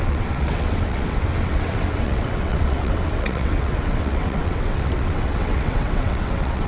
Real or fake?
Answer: fake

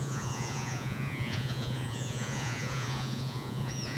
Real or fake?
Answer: fake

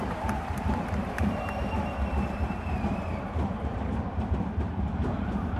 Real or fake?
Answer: fake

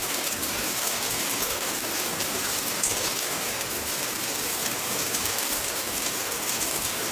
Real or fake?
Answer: fake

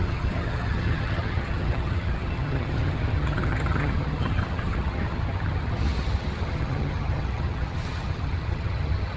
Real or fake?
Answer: fake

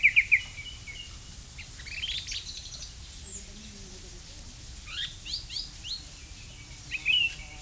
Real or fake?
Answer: real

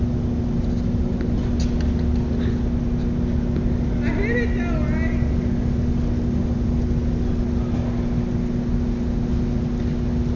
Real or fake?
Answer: real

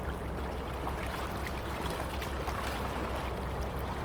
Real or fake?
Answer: real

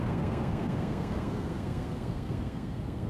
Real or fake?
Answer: fake